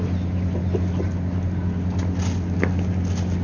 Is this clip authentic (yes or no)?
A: yes